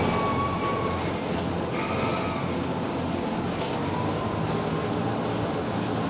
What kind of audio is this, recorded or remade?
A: recorded